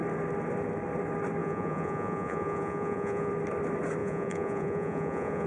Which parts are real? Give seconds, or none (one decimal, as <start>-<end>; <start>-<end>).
0.0-1.4; 3.3-4.0